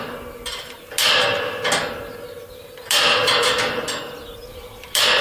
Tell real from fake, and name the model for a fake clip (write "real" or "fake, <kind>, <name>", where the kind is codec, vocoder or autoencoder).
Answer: real